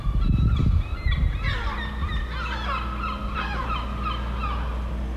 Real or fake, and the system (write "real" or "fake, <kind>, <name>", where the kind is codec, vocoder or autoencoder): real